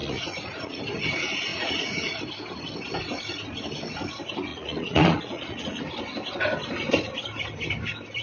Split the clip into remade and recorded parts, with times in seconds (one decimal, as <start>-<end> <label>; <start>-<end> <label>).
0.0-0.8 remade; 0.8-1.5 recorded; 1.5-2.2 remade; 2.2-4.5 recorded; 4.5-5.8 remade; 5.8-8.2 recorded